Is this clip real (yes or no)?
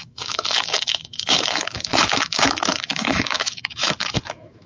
no